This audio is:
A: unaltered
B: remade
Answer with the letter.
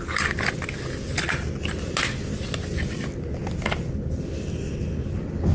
A